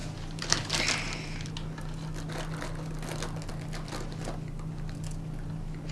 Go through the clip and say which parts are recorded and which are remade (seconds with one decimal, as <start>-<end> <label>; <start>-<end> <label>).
0.0-5.9 recorded